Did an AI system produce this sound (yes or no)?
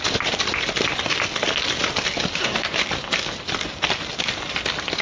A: no